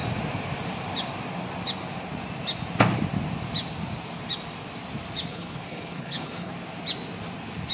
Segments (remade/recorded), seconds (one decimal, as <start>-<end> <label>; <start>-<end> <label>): 0.0-5.3 recorded; 5.3-6.5 remade; 6.5-7.7 recorded